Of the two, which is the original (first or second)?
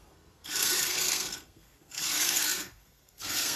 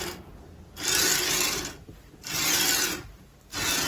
second